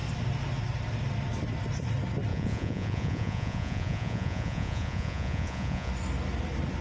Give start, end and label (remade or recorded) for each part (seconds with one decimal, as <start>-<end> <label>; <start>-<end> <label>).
0.0-2.3 recorded; 2.3-5.9 remade; 5.9-6.8 recorded